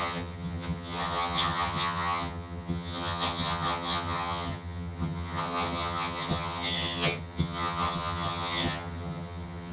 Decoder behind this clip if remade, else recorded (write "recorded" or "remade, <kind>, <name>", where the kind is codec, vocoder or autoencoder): remade, vocoder, HiFi-GAN